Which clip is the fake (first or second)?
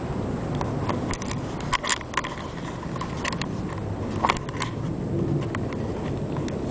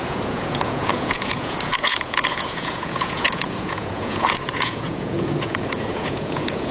second